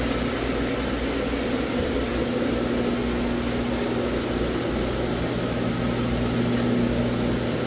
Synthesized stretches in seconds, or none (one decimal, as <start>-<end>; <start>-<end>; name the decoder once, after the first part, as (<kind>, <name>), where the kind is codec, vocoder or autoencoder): none